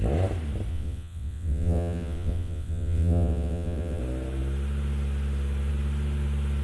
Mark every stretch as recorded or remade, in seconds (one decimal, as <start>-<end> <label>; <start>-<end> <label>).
0.0-0.7 recorded; 0.7-4.0 remade; 4.0-6.6 recorded